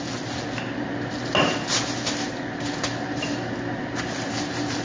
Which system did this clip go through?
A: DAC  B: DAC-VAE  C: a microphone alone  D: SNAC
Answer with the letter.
C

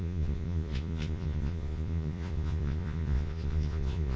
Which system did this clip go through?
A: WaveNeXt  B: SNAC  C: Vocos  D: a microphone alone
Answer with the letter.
C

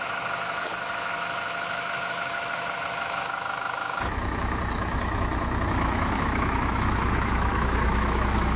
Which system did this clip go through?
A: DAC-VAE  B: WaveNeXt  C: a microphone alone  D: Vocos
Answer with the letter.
A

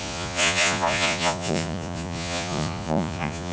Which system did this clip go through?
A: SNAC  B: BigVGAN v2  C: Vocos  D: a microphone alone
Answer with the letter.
C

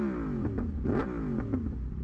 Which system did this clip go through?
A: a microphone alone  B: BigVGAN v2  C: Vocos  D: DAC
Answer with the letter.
A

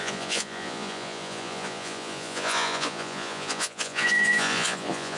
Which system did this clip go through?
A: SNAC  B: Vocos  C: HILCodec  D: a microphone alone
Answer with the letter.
B